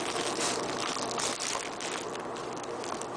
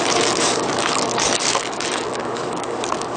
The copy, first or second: second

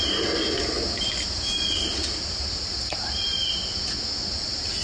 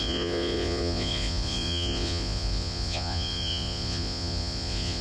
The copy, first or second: second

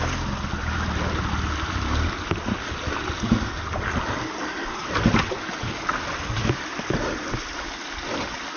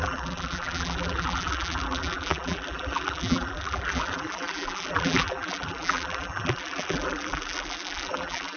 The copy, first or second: second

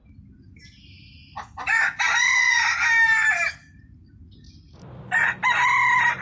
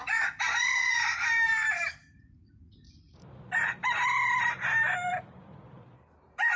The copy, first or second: second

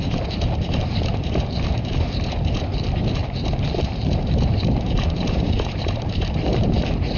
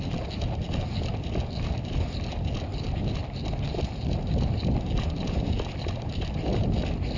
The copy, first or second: first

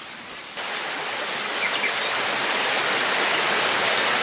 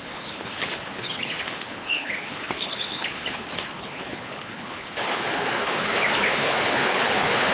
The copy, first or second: second